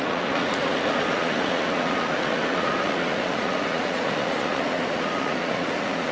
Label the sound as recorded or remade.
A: remade